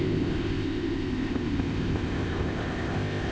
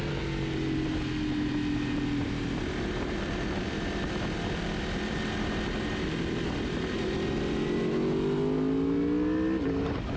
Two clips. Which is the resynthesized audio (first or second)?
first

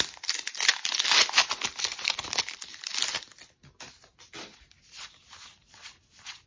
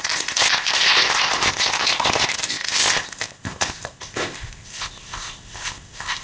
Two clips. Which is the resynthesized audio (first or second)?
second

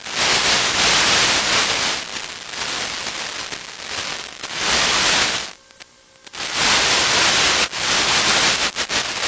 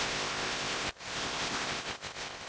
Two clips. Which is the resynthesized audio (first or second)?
second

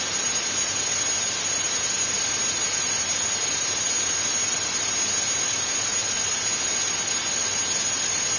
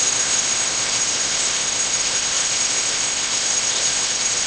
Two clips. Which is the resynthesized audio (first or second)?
second